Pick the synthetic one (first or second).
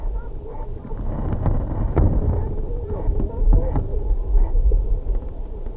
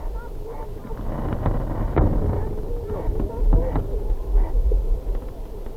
first